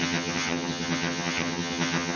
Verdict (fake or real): fake